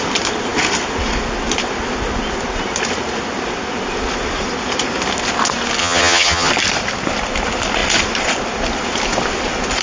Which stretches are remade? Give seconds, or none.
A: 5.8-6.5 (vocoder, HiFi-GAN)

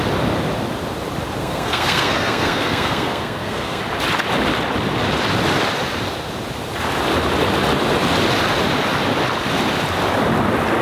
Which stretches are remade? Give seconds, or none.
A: 1.4-3.8 (codec, SNAC)